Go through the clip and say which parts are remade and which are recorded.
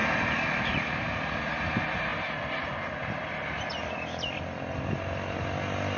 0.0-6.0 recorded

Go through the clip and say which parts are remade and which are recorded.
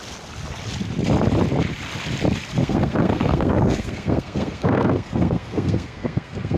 0.0-2.6 recorded; 2.6-6.6 remade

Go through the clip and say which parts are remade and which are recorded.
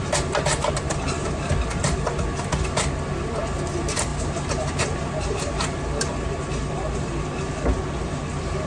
0.0-8.7 recorded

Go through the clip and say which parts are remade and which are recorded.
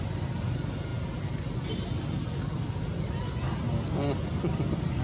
0.0-5.0 recorded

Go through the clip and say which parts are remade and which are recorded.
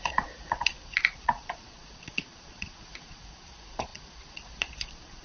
0.0-5.2 remade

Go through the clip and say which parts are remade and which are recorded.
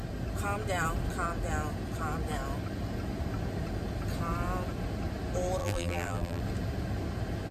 0.0-5.6 recorded; 5.6-6.4 remade; 6.4-7.5 recorded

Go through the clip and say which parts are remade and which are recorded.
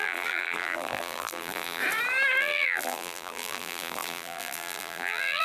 0.0-1.8 remade; 1.8-2.4 recorded; 2.4-5.4 remade